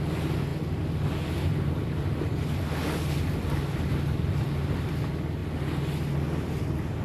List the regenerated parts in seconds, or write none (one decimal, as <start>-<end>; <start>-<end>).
none